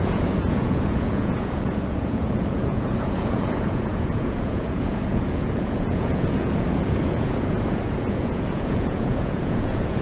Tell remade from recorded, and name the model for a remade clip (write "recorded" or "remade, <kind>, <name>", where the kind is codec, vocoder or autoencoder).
remade, vocoder, Vocos